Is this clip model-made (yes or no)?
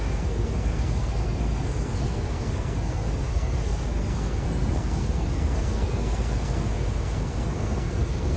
yes